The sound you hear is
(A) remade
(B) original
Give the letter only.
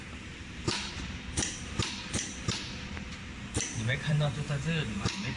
A